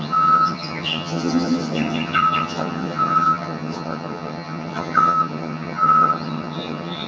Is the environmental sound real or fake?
fake